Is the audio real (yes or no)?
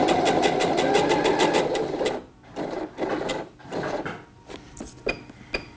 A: yes